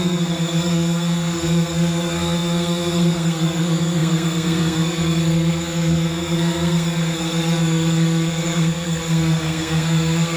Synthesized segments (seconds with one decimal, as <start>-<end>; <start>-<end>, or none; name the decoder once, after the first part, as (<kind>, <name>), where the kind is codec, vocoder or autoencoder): 0.0-10.4 (codec, SNAC)